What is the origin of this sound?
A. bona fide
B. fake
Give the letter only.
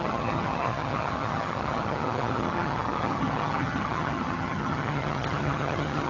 B